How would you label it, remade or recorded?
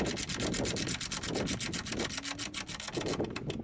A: recorded